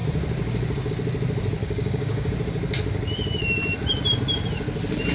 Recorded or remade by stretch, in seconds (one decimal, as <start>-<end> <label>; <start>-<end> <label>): 0.0-1.6 recorded; 1.6-2.3 remade; 2.3-5.1 recorded